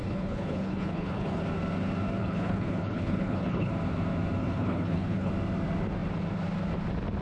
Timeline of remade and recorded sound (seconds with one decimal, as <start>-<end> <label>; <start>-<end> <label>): 0.0-1.4 remade; 1.4-2.2 recorded; 2.2-3.7 remade; 3.7-4.4 recorded; 4.4-5.3 remade; 5.3-7.2 recorded